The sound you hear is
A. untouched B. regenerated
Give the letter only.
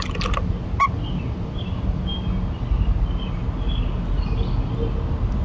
A